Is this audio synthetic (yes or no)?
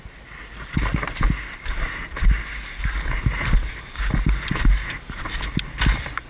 no